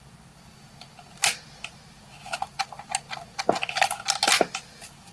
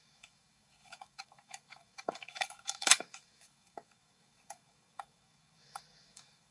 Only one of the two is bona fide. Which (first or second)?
first